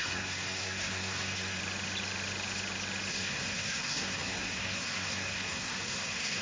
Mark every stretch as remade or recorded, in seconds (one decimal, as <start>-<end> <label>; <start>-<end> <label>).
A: 0.0-1.6 remade; 1.6-3.1 recorded; 3.1-6.4 remade

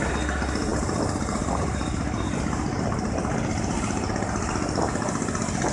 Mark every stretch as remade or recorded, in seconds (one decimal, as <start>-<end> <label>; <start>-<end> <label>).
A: 0.0-5.7 recorded

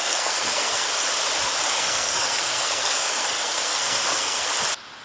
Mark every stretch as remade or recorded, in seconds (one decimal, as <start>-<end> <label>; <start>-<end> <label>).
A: 0.0-0.9 remade; 0.9-1.7 recorded; 1.7-4.5 remade; 4.5-5.0 recorded